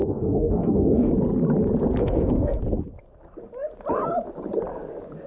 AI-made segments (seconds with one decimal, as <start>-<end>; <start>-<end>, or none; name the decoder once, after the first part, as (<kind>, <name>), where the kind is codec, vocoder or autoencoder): 0.0-1.1 (autoencoder, DAC-VAE); 2.0-2.6